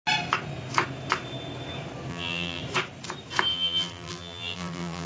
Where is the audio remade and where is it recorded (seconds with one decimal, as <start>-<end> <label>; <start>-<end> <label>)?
0.0-2.1 recorded; 2.1-2.6 remade; 2.6-3.5 recorded; 3.5-5.1 remade